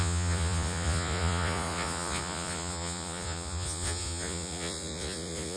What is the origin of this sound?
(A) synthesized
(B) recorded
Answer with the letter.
A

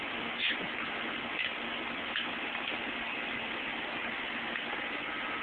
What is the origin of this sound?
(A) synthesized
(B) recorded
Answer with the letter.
B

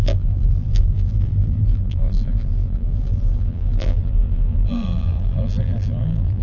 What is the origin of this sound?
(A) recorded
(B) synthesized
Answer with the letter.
B